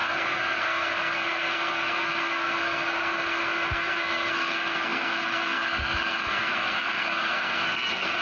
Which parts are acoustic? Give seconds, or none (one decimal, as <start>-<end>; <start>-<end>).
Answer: none